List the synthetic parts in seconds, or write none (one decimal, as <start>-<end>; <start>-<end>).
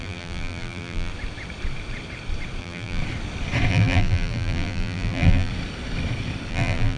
0.0-1.1; 2.6-3.0; 3.7-5.5; 6.5-7.0